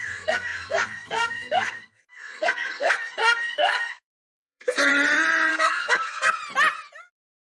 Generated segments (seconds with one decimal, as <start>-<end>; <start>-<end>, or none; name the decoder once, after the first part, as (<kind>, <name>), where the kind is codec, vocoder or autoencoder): 0.0-4.9 (codec, SNAC); 5.5-6.4; 7.0-7.4

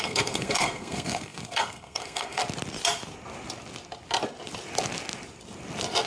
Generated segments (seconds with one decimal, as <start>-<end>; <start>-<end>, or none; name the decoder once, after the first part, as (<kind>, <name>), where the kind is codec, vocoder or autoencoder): 0.0-2.4 (codec, SNAC)

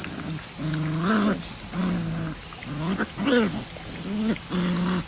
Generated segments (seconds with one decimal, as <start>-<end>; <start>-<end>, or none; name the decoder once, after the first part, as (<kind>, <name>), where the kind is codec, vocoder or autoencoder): none

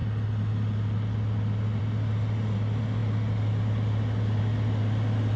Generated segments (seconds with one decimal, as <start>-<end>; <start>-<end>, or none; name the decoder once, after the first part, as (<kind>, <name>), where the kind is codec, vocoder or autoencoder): none

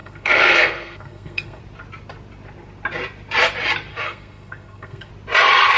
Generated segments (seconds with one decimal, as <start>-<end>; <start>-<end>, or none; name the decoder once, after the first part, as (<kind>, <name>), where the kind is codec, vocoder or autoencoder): 0.0-1.6 (codec, SNAC); 3.9-5.1

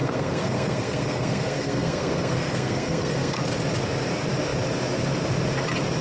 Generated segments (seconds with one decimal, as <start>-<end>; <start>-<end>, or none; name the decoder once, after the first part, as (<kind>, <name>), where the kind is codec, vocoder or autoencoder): 0.0-3.4 (codec, SNAC)

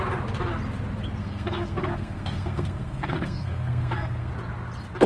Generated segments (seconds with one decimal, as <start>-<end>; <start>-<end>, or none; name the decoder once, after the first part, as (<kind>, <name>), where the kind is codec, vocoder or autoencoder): 1.2-4.3 (codec, SNAC)

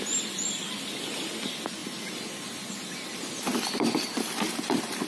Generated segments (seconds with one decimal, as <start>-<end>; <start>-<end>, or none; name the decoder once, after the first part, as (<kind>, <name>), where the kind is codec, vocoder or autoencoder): none